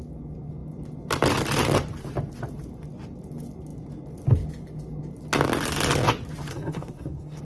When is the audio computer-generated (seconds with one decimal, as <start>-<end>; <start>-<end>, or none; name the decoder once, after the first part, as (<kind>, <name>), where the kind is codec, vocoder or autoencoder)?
6.5-7.4 (codec, SNAC)

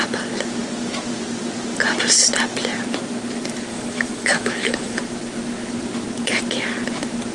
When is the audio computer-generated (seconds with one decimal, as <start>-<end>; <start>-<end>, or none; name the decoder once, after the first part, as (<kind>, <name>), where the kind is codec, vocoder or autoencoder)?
3.7-5.0 (autoencoder, DAC-VAE)

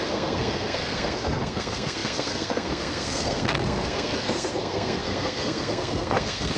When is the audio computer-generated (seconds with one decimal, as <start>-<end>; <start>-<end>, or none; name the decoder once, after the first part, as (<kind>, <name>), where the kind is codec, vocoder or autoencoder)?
0.0-6.6 (codec, SNAC)

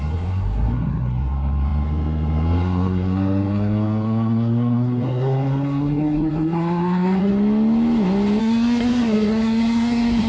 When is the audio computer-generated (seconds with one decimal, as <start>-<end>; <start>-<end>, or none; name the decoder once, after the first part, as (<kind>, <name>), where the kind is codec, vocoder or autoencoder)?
0.0-7.3 (codec, SNAC); 8.4-10.3

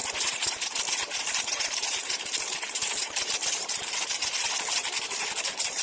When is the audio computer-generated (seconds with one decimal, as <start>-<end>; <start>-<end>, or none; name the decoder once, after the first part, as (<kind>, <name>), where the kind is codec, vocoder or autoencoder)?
1.2-5.8 (vocoder, BigVGAN v2)

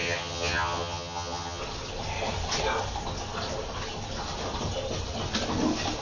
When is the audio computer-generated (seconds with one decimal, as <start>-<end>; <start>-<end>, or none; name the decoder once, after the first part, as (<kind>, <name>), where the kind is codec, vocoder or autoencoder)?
0.0-1.6 (vocoder, HiFi-GAN)

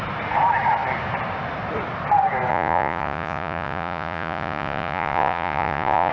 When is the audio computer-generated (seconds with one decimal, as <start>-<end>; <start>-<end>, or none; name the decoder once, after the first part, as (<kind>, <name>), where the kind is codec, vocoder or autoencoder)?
2.5-6.1 (vocoder, Vocos)

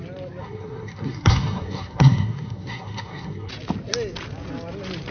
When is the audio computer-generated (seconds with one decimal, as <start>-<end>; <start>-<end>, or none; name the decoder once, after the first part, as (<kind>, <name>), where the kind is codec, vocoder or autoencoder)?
0.4-3.5 (codec, SNAC)